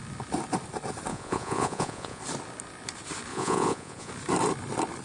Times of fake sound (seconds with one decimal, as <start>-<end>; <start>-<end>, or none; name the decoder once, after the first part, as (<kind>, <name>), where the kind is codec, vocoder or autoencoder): 1.1-2.2 (vocoder, Vocos); 3.3-4.1